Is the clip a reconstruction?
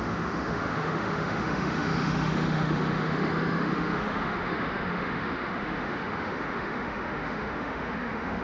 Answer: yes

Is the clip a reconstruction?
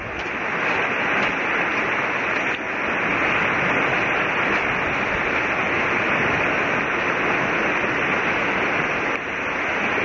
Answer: no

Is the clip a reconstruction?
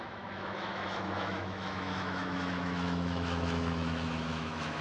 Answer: yes